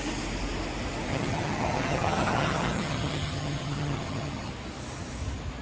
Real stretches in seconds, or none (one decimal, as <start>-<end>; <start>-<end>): 0.0-1.1; 4.5-5.6